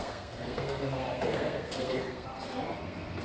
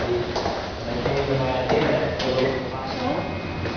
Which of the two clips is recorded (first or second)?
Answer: second